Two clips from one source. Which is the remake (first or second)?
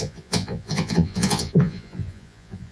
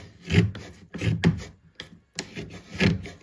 first